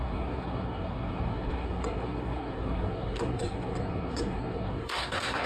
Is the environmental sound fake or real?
fake